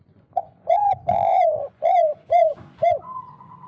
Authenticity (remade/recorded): remade